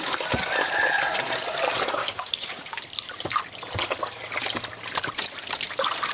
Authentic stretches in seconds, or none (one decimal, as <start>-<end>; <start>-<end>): 0.0-2.0; 2.8-6.1